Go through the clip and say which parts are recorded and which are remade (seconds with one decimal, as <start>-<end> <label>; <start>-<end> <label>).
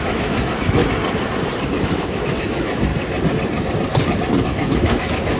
0.0-0.8 remade; 0.8-1.8 recorded; 1.8-2.9 remade; 2.9-4.4 recorded; 4.4-5.4 remade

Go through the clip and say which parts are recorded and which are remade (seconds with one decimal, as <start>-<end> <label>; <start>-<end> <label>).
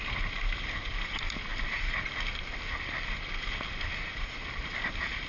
0.0-5.3 recorded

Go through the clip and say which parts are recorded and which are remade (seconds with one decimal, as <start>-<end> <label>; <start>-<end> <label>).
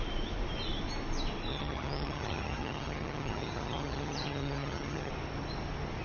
0.0-1.5 recorded; 1.5-5.1 remade; 5.1-6.0 recorded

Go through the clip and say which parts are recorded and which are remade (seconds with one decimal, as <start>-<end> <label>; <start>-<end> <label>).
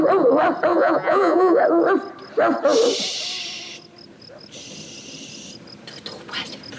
0.0-0.7 recorded; 0.7-1.6 remade; 1.6-6.8 recorded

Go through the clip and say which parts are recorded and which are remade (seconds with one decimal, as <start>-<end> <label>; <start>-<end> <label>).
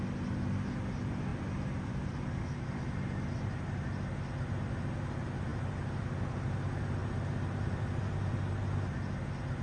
0.0-9.6 recorded